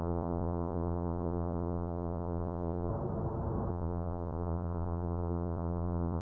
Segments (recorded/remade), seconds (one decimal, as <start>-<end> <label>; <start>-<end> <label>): 0.0-2.9 remade; 2.9-3.7 recorded; 3.7-6.2 remade